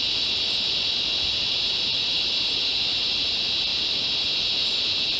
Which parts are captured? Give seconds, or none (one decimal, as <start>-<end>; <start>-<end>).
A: 0.0-5.2